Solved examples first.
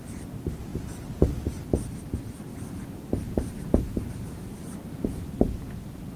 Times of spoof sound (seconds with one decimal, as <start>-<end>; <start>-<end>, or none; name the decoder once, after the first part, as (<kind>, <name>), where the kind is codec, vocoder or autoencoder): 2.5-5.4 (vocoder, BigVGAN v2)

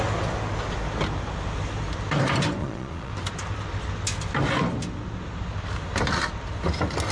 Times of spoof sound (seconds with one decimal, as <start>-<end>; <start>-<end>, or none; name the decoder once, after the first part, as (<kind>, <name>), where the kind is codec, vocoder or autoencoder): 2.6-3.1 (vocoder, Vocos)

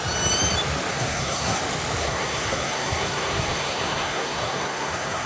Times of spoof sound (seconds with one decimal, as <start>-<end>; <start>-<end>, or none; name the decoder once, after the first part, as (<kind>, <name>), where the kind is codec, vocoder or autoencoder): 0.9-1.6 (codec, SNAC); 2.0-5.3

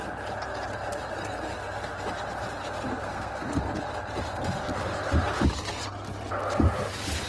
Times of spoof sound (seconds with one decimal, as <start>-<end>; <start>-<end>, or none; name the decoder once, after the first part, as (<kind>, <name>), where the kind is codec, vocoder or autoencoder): 3.0-3.6 (codec, SNAC)

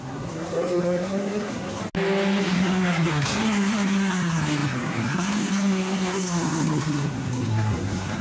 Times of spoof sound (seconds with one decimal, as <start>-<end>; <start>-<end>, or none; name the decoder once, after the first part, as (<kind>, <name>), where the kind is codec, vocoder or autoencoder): 0.0-1.8 (codec, SNAC); 2.4-8.2